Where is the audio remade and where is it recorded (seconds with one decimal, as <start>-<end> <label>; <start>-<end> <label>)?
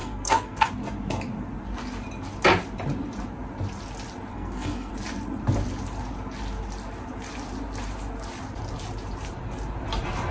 0.0-0.7 remade; 0.7-4.3 recorded; 4.3-4.9 remade; 4.9-10.3 recorded